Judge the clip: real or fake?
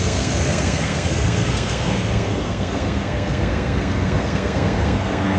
fake